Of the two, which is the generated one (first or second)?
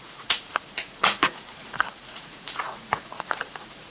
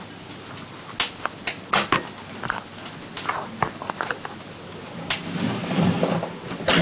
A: first